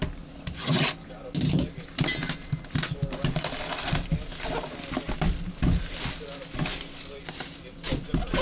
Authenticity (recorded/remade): recorded